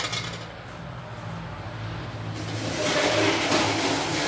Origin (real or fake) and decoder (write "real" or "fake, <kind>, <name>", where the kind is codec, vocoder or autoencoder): real